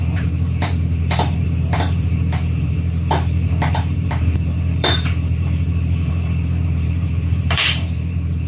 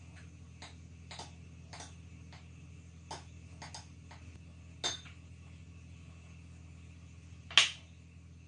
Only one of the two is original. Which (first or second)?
second